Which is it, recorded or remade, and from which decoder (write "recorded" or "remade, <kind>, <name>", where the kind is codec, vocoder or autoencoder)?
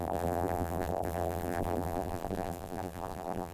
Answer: remade, vocoder, BigVGAN v2